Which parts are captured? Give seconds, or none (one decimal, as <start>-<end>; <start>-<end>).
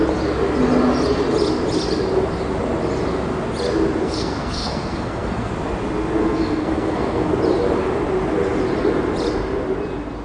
0.0-4.0; 5.5-6.2; 7.3-10.2